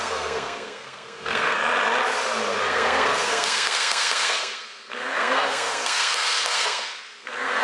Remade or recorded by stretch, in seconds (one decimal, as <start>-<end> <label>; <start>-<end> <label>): 0.0-1.6 remade; 1.6-2.6 recorded; 2.6-7.6 remade